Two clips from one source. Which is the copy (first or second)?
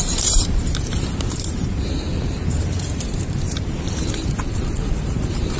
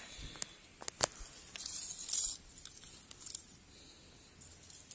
first